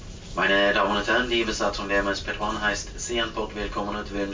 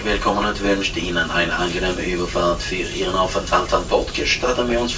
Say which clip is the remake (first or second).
second